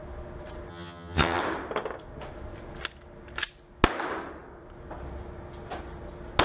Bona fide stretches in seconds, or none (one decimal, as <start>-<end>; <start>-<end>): 0.0-0.7; 1.4-6.4